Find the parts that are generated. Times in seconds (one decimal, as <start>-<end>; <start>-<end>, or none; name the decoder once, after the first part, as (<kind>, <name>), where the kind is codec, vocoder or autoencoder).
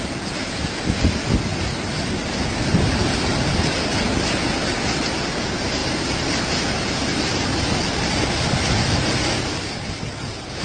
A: none